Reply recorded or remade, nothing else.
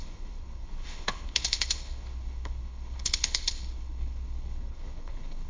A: remade